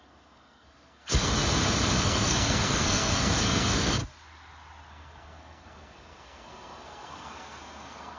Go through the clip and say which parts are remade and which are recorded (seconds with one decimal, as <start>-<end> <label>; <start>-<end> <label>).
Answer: 0.0-1.3 remade; 1.3-2.0 recorded; 2.0-4.0 remade; 4.0-4.9 recorded; 4.9-8.2 remade